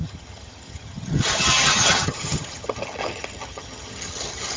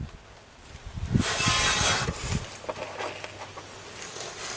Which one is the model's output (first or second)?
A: first